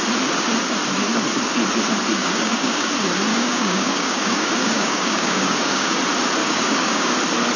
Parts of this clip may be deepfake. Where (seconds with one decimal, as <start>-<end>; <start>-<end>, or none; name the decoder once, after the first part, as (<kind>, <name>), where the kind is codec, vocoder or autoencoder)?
2.2-2.9 (codec, DAC); 3.3-6.0; 6.4-7.1